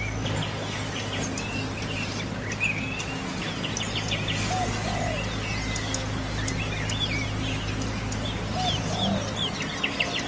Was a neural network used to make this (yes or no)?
no